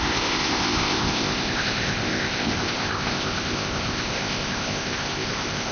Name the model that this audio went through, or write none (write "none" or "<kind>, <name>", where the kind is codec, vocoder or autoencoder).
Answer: codec, ZipCodec